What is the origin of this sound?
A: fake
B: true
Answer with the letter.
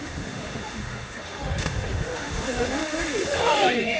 A